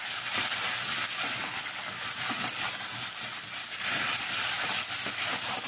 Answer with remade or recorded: recorded